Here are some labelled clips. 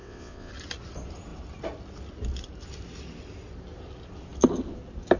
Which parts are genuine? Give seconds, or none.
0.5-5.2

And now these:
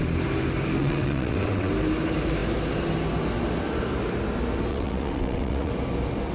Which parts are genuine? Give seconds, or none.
0.0-0.8; 1.7-4.7; 5.7-6.3

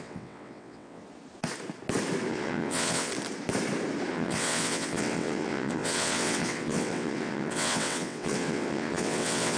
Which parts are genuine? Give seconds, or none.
1.0-2.3; 3.1-4.1

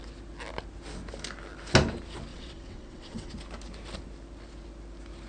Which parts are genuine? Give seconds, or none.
0.0-2.3; 3.3-5.3

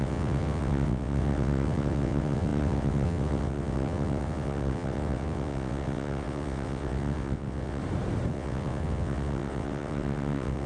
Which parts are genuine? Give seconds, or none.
7.8-8.3

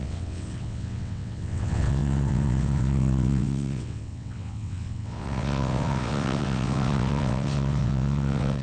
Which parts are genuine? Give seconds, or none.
none